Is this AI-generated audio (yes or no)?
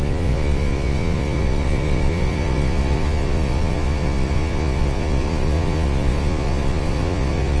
yes